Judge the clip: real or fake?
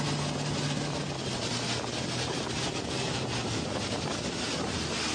real